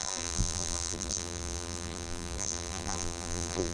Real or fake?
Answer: fake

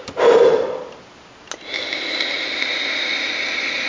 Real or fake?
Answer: real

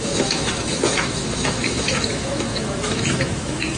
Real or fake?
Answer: fake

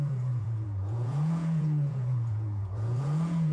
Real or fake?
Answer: fake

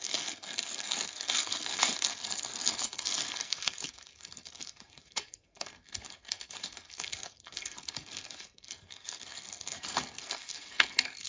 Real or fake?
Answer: fake